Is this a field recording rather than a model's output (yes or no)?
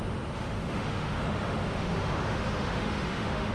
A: no